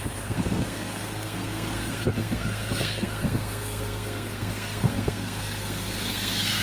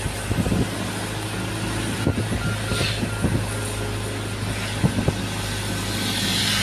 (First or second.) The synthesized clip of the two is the first